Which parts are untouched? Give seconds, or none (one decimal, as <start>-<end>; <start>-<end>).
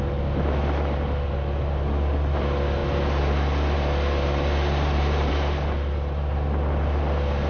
0.0-7.5